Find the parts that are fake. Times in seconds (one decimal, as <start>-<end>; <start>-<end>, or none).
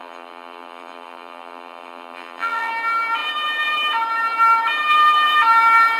0.0-2.7